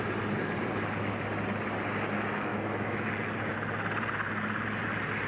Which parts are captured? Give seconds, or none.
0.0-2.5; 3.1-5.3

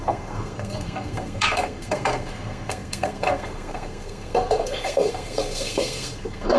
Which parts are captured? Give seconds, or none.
none

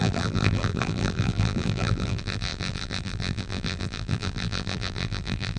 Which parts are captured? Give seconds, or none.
none

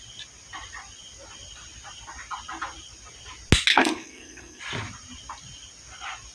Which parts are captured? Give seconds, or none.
0.0-3.7; 4.6-6.3

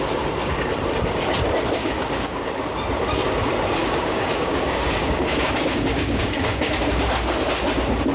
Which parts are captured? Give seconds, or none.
0.0-1.8; 2.6-3.8; 6.6-8.1

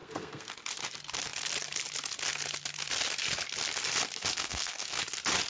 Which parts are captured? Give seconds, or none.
0.5-4.4; 5.0-5.5

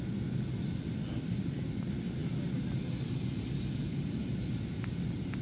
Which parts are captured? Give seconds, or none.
0.0-5.4